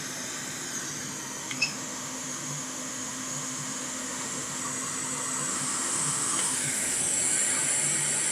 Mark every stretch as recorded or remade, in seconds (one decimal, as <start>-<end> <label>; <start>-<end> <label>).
0.0-1.4 recorded; 1.4-4.6 remade; 4.6-5.5 recorded; 5.5-7.0 remade; 7.0-8.3 recorded